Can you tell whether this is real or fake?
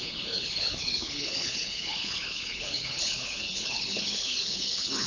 fake